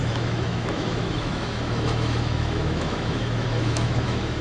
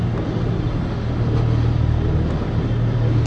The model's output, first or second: first